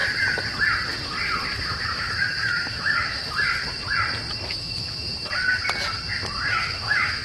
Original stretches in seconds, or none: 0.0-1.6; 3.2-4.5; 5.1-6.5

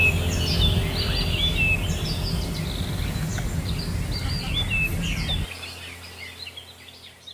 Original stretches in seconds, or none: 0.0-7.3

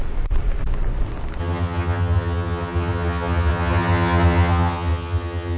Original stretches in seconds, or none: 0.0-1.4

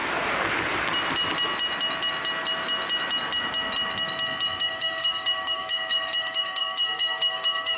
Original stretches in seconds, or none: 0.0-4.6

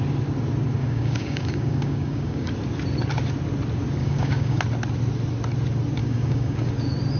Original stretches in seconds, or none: 0.0-0.8; 2.5-4.0; 4.6-6.0; 6.7-7.2